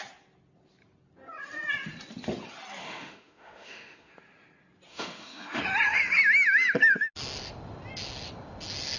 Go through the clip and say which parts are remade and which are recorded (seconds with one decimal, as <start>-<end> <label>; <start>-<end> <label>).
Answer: 0.0-2.8 recorded; 2.8-4.1 remade; 4.1-4.9 recorded; 4.9-5.6 remade; 5.6-9.0 recorded